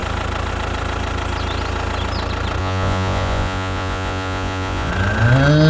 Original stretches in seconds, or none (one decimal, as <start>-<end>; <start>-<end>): 0.0-2.6; 4.9-5.7

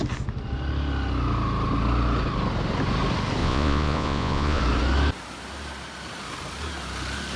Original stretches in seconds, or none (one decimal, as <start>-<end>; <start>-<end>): 0.0-3.4; 4.6-7.4

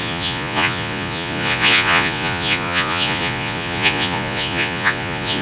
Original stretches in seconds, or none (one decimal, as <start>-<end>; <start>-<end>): none